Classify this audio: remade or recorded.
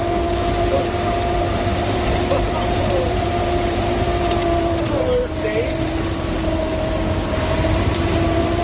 remade